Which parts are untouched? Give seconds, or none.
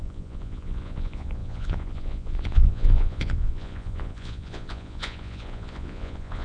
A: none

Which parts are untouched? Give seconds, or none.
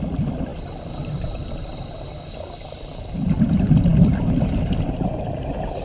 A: 0.0-5.8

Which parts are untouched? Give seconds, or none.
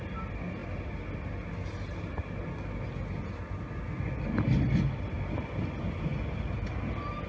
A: 0.0-7.3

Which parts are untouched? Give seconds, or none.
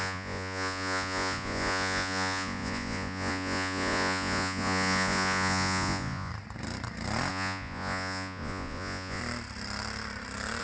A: 6.3-7.3; 9.2-10.6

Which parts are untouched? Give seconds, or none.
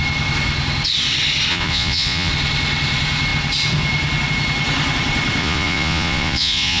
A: 0.0-1.5; 2.3-5.4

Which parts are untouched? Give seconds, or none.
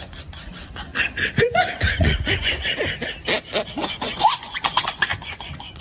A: 0.9-1.4; 2.7-3.7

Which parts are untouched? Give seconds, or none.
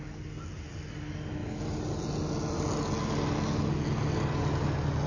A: 0.0-5.1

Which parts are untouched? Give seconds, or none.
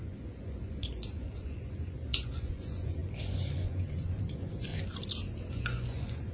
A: 4.7-5.5